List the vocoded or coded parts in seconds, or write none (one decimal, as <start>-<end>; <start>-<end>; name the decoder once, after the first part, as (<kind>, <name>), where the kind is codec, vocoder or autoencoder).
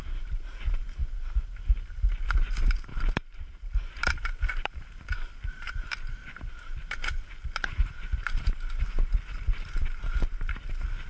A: 1.0-2.2 (vocoder, BigVGAN v2); 2.9-5.7